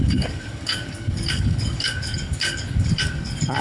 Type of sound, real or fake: fake